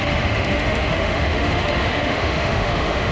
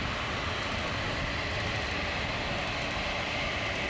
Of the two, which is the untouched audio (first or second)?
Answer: second